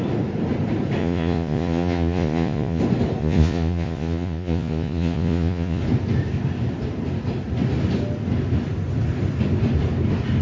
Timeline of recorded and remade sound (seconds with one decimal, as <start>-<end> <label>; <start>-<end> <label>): 0.0-1.0 recorded; 1.0-2.8 remade; 2.8-3.2 recorded; 3.2-5.8 remade; 5.8-10.4 recorded